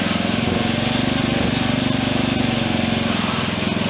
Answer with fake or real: real